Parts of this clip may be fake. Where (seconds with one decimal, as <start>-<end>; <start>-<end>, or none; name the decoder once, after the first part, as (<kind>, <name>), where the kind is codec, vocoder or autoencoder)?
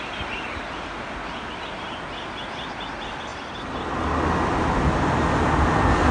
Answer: none